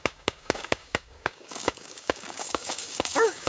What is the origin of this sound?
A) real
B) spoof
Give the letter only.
B